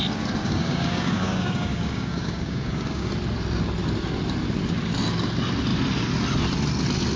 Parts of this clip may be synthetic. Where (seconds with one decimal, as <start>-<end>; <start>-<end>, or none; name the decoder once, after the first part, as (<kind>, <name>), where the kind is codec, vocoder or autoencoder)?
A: 0.4-3.1 (codec, DAC)